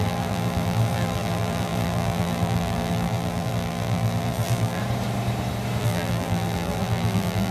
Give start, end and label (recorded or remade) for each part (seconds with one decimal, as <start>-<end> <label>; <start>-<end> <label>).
0.0-4.8 remade; 4.8-5.8 recorded; 5.8-7.5 remade